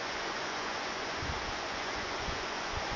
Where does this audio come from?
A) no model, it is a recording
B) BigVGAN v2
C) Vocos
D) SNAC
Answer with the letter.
C